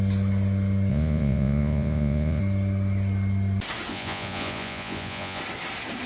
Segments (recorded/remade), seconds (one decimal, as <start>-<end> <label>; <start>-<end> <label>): 0.0-0.9 recorded; 0.9-2.4 remade; 2.4-3.9 recorded; 3.9-5.4 remade; 5.4-6.1 recorded